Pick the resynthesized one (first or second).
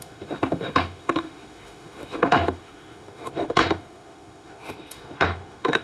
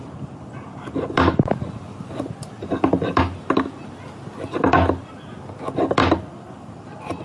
first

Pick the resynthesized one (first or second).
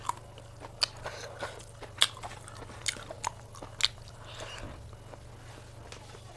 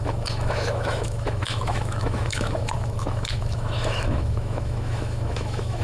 second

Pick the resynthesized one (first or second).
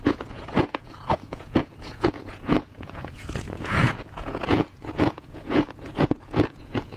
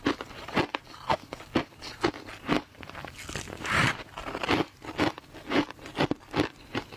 first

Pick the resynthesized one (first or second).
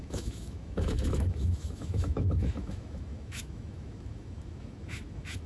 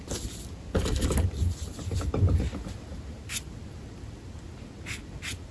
first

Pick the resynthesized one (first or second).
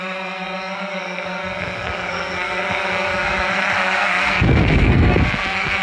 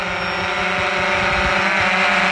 first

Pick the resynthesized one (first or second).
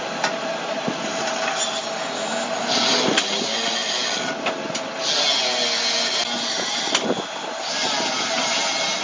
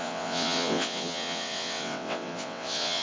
second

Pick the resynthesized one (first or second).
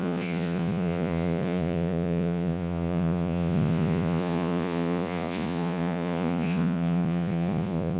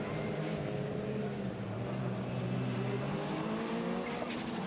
first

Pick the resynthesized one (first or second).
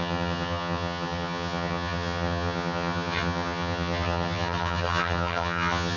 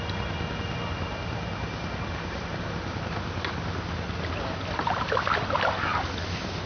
first